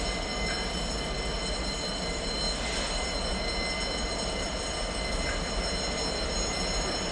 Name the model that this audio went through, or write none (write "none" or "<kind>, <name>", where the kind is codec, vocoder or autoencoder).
none